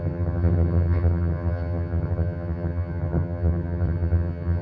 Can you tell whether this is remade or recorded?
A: remade